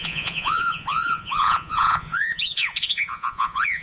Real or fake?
fake